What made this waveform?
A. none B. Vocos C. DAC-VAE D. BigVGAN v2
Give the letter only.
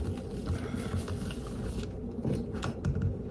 A